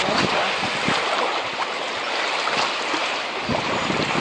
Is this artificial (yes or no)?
no